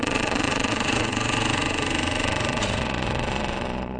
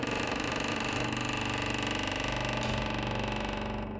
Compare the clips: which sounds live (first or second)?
second